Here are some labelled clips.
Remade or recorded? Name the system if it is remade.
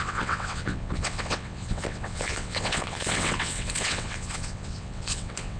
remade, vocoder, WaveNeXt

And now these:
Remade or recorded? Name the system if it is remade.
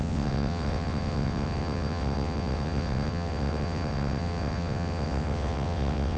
remade, vocoder, WaveNeXt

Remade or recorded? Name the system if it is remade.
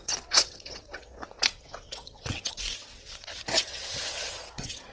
remade, vocoder, WaveNeXt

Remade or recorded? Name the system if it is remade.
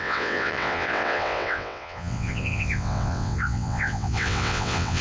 remade, vocoder, WaveNeXt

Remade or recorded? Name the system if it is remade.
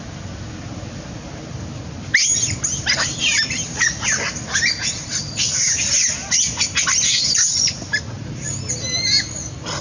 recorded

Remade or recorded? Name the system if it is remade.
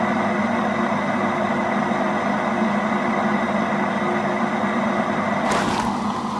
recorded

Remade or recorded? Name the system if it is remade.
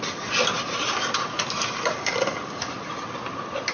recorded